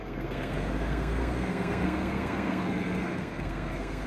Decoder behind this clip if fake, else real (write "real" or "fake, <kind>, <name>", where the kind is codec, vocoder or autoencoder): fake, codec, SNAC